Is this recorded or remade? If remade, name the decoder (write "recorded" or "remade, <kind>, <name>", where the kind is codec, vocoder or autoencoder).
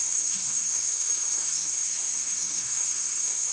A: remade, codec, SNAC